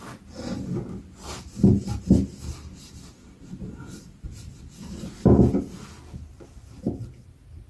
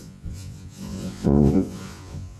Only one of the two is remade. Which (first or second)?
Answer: second